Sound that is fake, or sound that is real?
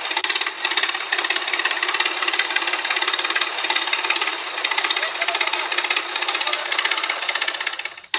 real